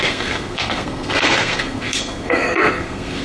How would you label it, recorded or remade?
remade